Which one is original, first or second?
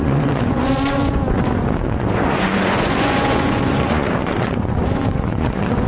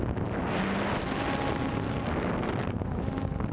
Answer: second